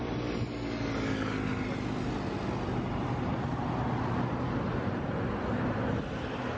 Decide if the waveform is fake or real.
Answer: real